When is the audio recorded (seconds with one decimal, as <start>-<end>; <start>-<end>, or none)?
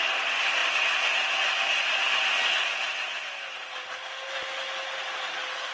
0.0-5.7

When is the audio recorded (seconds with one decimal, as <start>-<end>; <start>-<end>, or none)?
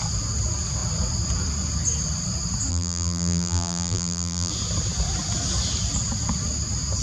0.0-2.7; 4.5-7.0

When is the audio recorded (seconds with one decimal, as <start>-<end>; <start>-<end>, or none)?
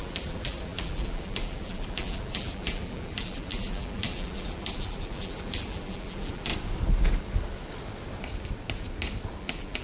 6.5-9.4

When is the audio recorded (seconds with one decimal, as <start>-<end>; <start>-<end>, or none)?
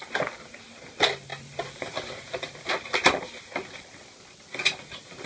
0.0-1.3; 2.7-5.3